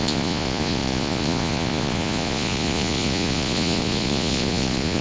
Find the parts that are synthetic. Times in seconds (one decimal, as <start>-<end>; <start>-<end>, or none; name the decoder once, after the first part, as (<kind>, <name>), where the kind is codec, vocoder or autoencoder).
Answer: 0.0-5.0 (vocoder, Vocos)